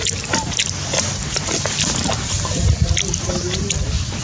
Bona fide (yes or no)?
yes